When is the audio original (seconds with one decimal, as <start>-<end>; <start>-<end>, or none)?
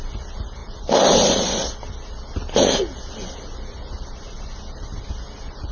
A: 0.0-0.6; 1.5-5.7